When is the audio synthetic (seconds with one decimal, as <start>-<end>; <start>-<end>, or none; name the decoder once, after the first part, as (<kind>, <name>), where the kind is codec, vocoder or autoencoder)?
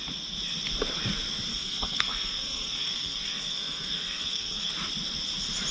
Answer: 1.5-4.7 (codec, SNAC)